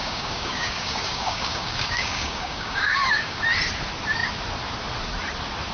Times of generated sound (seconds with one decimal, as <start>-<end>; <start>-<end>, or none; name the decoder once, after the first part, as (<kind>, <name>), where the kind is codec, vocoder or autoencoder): 0.0-3.4 (codec, DAC)